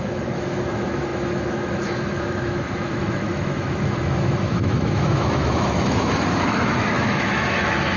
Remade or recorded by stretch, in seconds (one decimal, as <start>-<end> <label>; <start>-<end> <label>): 0.0-8.0 remade